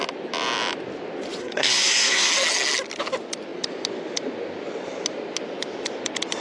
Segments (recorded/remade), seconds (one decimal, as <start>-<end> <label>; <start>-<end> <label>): 0.0-1.4 recorded; 1.4-2.3 remade; 2.3-6.4 recorded